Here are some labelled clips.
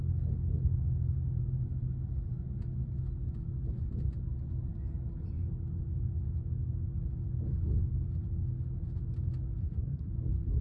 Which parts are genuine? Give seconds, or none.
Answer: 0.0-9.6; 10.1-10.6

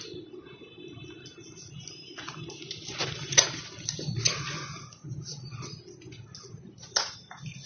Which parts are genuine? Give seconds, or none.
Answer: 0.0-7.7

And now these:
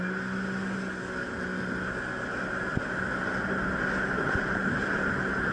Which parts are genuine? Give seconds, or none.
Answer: 0.0-5.5